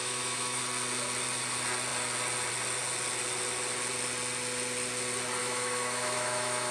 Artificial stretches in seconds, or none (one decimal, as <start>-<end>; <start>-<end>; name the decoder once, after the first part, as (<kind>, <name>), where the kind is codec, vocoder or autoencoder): 0.0-0.6 (autoencoder, DAC-VAE); 5.4-6.7